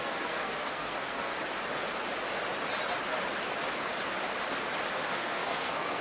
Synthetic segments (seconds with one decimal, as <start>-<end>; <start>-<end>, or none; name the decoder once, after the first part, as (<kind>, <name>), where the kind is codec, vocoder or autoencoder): 0.0-1.3 (codec, SNAC); 4.9-6.0